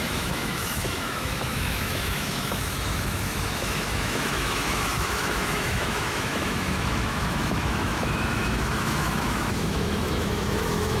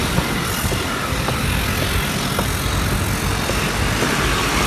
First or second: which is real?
second